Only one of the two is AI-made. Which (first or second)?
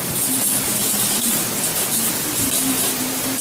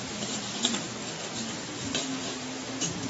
first